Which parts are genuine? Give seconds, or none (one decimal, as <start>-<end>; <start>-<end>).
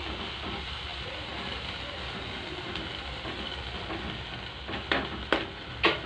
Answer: 0.0-6.1